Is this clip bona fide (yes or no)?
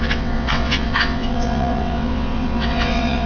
no